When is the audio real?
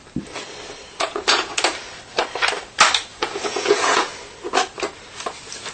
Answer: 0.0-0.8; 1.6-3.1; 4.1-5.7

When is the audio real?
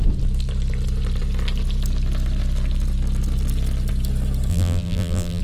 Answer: 0.0-4.5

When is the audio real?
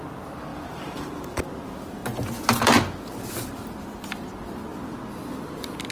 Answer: 0.0-0.5; 1.4-5.9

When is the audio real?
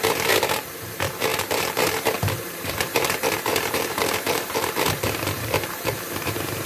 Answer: none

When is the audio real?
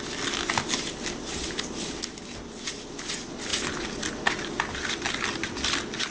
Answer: 0.0-6.1